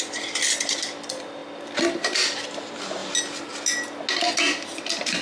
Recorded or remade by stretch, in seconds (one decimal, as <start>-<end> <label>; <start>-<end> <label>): 0.0-5.2 recorded